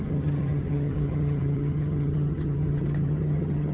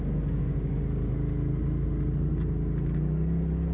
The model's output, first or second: first